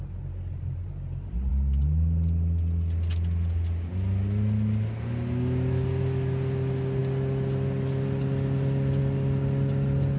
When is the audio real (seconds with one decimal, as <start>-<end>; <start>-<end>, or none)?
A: 0.0-10.2